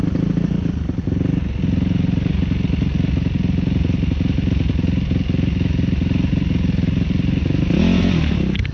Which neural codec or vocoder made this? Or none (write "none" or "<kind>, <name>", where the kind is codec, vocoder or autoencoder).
none